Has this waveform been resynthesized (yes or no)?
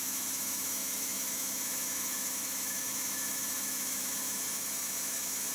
yes